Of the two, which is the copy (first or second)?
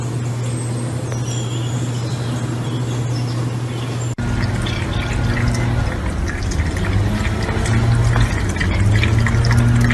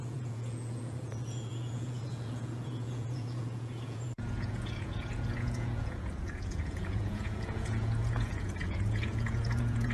second